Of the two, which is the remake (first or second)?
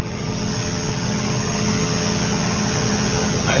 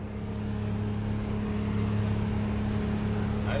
first